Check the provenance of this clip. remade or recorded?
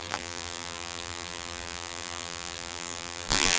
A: remade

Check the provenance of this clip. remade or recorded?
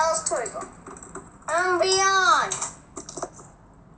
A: recorded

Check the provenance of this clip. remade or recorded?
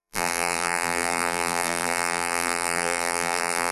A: remade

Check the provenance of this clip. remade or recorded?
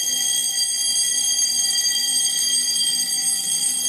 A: recorded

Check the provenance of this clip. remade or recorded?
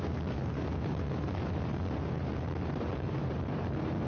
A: remade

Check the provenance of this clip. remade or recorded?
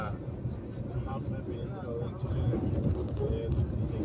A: recorded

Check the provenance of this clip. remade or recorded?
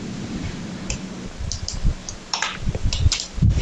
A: remade